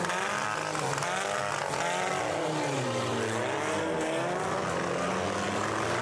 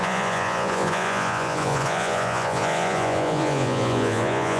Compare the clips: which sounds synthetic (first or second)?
second